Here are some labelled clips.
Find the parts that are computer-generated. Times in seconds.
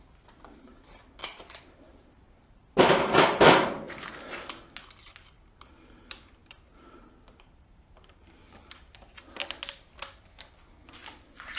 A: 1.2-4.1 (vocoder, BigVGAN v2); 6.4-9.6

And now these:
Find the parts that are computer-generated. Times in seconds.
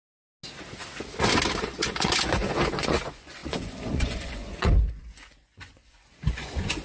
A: 1.6-6.8 (vocoder, Vocos)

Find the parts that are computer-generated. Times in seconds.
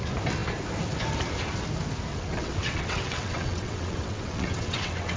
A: 2.1-5.2 (vocoder, WaveNeXt)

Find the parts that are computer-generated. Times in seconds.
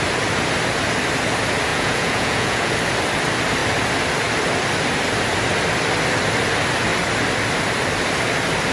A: 1.7-2.7 (vocoder, Vocos)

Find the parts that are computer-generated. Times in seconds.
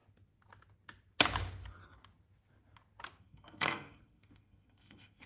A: 3.2-5.3 (codec, SNAC)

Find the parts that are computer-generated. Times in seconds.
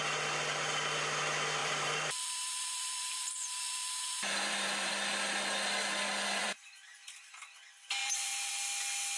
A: 1.6-4.9 (vocoder, BigVGAN v2); 6.4-7.3; 8.0-8.5